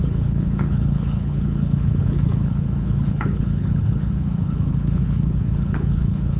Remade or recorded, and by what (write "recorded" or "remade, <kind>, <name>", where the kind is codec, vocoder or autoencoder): remade, codec, HILCodec